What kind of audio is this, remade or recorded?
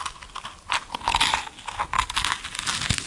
recorded